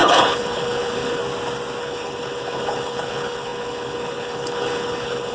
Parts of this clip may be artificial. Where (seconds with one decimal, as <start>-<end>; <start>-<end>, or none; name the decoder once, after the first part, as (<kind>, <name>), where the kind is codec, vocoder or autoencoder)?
0.0-1.2 (codec, HILCodec); 1.8-5.3